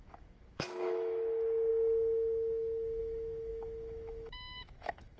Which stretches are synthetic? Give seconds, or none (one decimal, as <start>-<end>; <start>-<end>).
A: 0.0-5.2